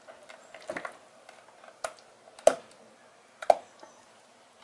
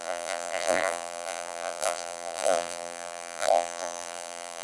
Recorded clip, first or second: first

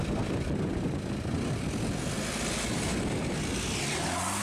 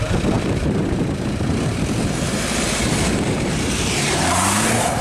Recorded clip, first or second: first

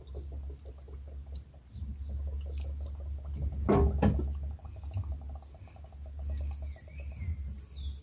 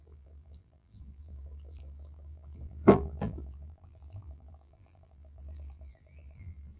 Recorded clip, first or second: first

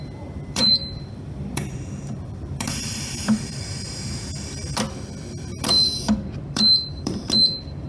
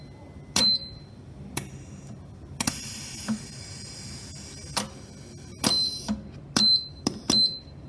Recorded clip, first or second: second